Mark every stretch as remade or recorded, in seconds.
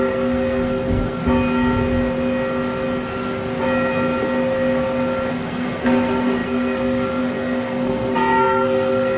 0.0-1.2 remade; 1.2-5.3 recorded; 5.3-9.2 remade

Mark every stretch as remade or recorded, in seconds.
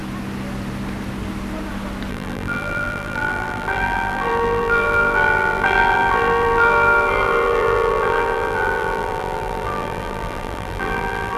0.0-2.1 recorded; 2.1-11.4 remade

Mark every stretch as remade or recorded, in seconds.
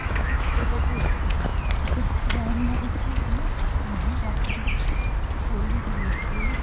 0.0-1.1 remade; 1.1-6.6 recorded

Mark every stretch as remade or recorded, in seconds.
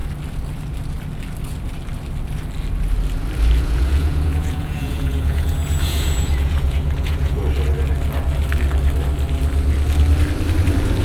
0.0-3.6 recorded; 3.6-7.4 remade; 7.4-11.0 recorded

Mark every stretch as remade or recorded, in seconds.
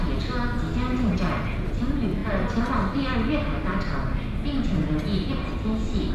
0.0-6.1 recorded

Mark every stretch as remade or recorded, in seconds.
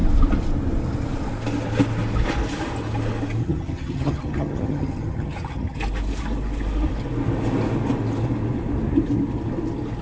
0.0-3.4 recorded; 3.4-5.8 remade; 5.8-10.0 recorded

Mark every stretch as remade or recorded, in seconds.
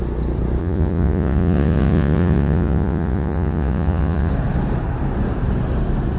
0.0-0.6 recorded; 0.6-4.3 remade; 4.3-6.2 recorded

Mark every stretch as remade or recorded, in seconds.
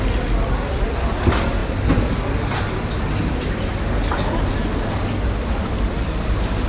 0.0-6.7 recorded